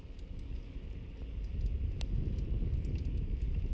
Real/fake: real